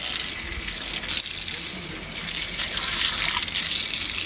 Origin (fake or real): real